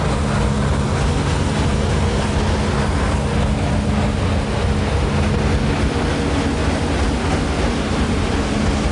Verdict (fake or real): real